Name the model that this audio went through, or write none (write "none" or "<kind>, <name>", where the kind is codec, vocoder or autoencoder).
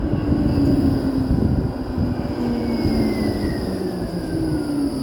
none